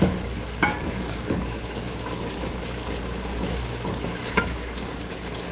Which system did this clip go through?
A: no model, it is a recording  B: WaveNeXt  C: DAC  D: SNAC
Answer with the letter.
C